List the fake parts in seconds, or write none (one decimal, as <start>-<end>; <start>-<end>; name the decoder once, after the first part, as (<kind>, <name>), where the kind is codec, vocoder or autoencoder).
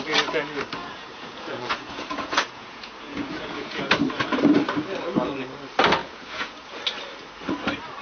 0.8-3.8 (vocoder, Vocos); 6.0-6.8